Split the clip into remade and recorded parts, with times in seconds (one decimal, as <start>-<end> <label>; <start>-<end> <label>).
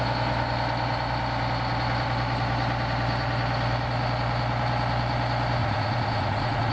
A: 0.0-5.6 recorded; 5.6-6.7 remade